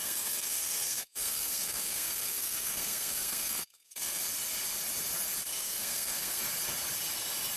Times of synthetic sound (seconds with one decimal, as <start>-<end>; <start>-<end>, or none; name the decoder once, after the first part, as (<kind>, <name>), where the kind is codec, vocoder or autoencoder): 0.0-4.2 (codec, SNAC); 5.5-6.4